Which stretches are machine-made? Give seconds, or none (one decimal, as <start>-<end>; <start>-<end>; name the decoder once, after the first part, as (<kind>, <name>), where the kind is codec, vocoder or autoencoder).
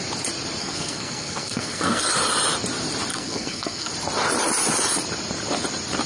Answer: 0.6-2.0 (codec, SNAC); 3.1-3.9